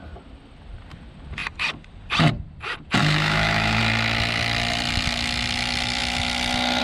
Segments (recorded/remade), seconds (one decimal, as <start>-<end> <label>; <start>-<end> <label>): 0.0-3.0 recorded; 3.0-3.8 remade; 3.8-6.8 recorded